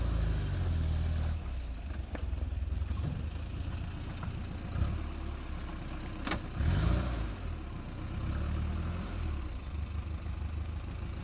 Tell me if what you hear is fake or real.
real